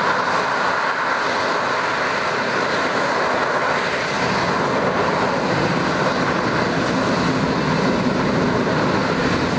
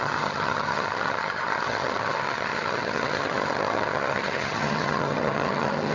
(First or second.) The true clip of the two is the first